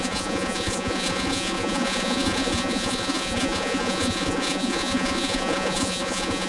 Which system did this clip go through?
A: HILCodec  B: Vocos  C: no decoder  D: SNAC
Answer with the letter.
B